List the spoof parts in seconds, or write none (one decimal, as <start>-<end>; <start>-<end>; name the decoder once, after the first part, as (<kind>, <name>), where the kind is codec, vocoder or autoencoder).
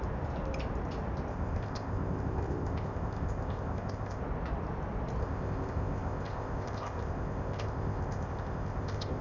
1.3-4.2 (codec, ZipCodec); 5.2-9.2